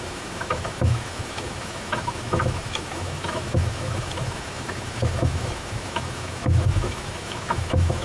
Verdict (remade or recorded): remade